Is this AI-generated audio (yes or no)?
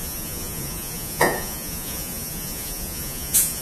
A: yes